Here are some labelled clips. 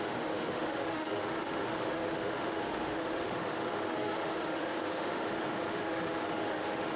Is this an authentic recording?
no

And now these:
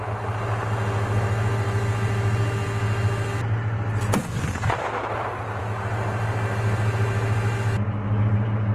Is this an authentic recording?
yes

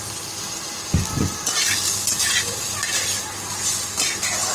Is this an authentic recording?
yes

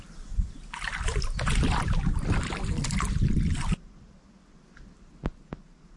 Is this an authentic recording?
yes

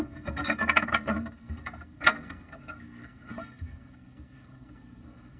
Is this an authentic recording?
no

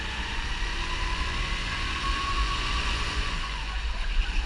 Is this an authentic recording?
no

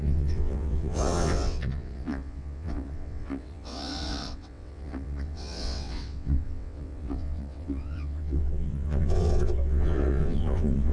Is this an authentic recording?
no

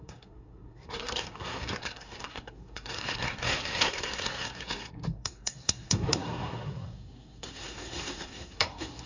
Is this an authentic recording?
no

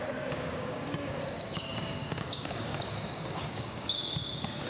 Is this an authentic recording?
no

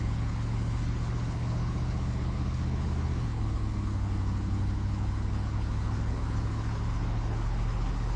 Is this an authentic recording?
no